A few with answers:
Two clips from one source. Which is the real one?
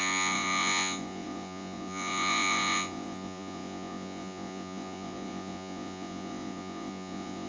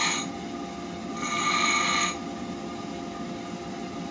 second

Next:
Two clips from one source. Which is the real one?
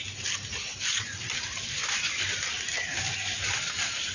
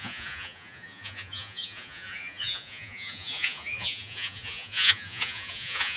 first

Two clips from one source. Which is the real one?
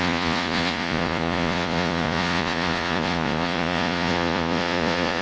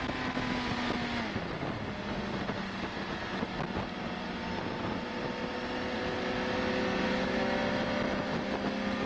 second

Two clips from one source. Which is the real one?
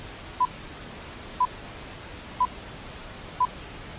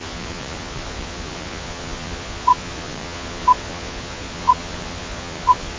first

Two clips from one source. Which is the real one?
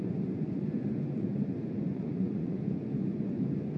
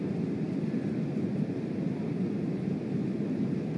second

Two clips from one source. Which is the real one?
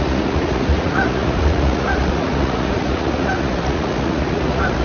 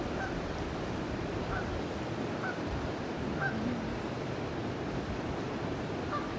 second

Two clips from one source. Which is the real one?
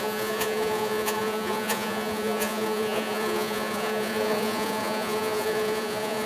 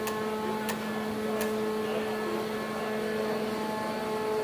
second